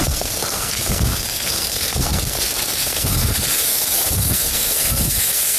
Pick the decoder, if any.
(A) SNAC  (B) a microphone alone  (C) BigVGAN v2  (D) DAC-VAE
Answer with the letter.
A